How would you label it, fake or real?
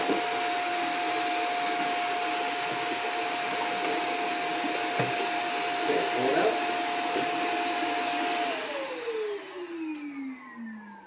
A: real